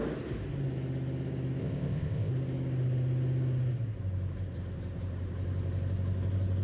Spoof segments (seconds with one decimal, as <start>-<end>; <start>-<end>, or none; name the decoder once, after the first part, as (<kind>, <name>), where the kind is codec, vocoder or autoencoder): 1.6-2.3 (codec, ZipCodec)